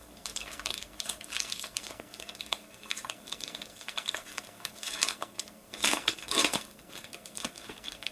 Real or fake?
fake